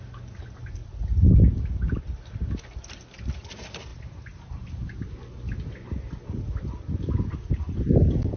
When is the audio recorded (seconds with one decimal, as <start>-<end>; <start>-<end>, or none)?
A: 0.0-8.4